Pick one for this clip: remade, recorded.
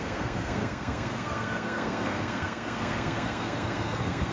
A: remade